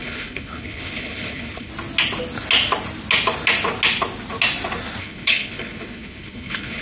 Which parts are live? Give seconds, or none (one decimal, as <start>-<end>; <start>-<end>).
1.7-5.0